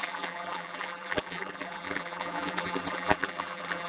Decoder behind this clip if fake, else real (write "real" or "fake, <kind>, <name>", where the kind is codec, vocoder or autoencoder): fake, vocoder, BigVGAN v2